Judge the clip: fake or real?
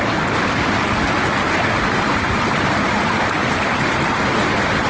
real